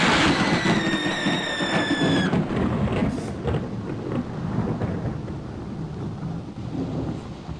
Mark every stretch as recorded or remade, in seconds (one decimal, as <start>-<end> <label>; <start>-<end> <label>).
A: 0.0-7.6 recorded